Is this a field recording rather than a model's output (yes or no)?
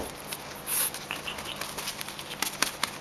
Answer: yes